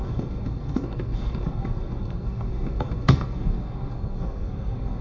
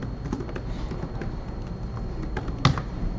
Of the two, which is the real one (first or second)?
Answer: second